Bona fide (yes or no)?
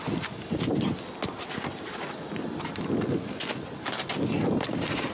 yes